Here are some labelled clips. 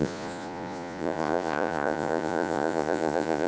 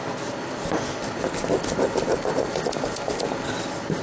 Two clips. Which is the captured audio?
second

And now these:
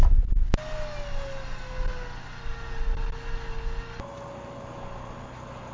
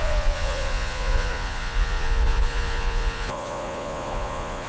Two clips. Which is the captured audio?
first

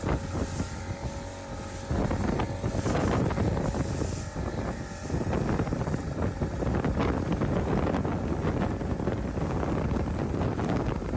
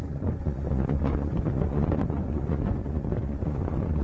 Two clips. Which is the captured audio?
first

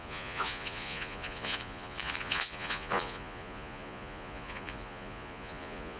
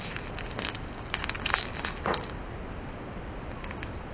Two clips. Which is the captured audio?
second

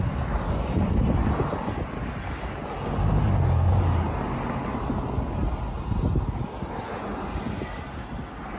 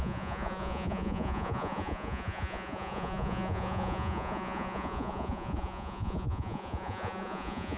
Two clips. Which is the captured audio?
first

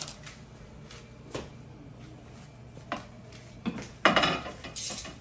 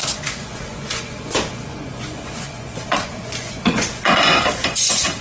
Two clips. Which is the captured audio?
first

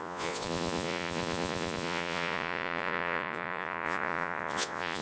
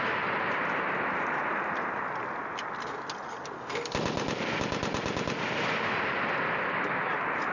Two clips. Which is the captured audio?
second